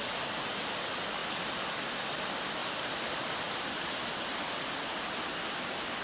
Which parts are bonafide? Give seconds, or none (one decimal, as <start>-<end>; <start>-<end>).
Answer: 0.0-6.0